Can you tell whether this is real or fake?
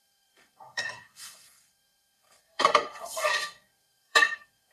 fake